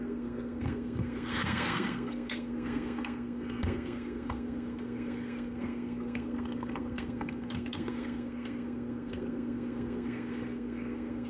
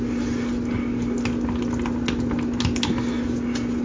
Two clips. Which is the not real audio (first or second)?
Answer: first